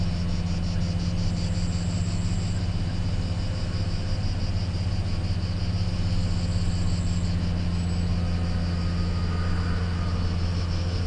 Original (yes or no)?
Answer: yes